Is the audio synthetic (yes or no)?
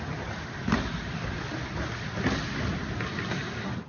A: no